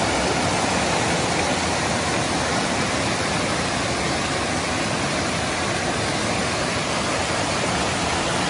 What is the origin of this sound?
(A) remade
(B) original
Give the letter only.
B